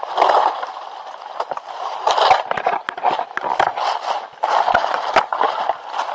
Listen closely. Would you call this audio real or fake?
real